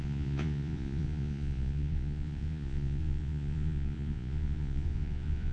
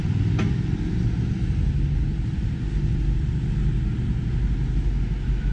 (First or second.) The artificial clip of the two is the first